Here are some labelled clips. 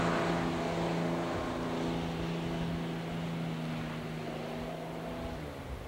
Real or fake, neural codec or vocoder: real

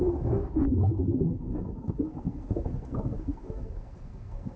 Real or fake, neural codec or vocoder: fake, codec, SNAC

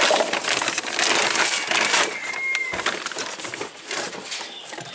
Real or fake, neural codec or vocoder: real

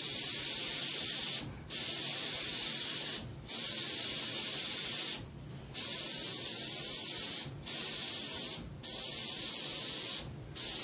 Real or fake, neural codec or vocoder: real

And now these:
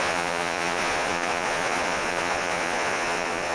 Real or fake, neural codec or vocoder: fake, vocoder, Vocos